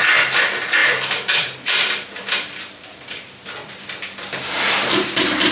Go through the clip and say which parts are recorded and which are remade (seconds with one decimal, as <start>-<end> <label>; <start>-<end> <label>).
0.0-0.8 recorded; 0.8-4.0 remade; 4.0-5.5 recorded